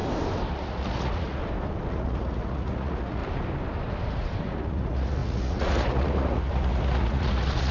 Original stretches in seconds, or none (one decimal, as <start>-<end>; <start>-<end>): 0.0-0.5; 1.4-1.9; 3.2-4.4